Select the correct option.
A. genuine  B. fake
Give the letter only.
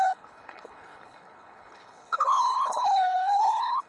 B